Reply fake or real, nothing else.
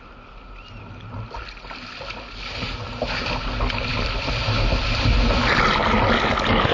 real